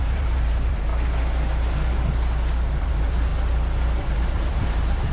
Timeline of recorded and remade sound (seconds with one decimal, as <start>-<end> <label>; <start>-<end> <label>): 0.0-0.9 remade; 0.9-2.7 recorded; 2.7-3.3 remade; 3.3-4.0 recorded; 4.0-5.1 remade